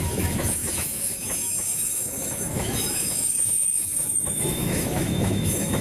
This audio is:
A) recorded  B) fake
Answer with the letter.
B